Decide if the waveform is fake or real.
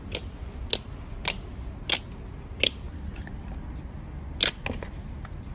real